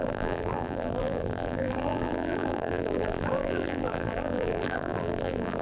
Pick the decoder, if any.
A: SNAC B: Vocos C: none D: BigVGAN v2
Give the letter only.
D